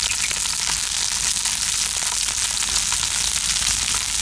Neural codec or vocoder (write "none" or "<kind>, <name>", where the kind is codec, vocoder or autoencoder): none